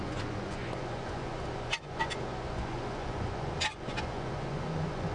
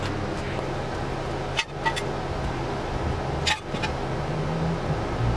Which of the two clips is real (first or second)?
second